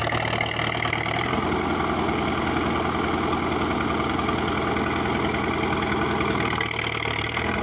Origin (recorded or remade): recorded